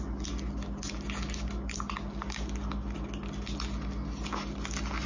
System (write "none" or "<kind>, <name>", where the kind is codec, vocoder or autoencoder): none